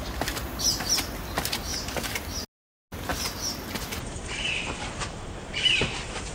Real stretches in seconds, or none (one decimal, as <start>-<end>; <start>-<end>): 0.0-1.7; 2.4-3.1